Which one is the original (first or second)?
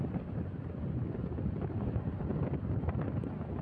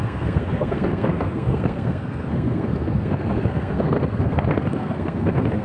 first